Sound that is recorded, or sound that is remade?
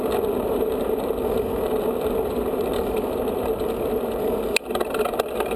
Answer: remade